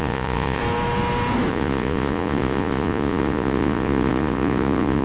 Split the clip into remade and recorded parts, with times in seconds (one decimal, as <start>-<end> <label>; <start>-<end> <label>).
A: 0.0-0.6 remade; 0.6-1.5 recorded; 1.5-5.0 remade